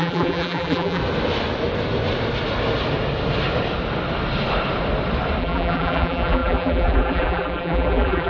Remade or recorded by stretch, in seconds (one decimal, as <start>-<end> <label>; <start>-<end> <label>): 0.0-1.0 remade; 1.0-5.4 recorded; 5.4-8.3 remade